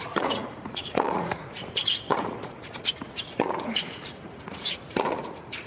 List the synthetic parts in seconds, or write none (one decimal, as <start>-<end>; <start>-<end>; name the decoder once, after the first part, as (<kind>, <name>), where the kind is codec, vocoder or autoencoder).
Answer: 0.0-5.7 (vocoder, Vocos)